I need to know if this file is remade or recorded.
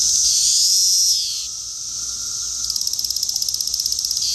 recorded